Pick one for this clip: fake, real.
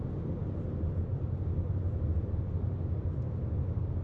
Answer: real